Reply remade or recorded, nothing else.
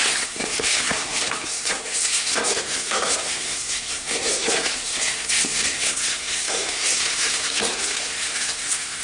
remade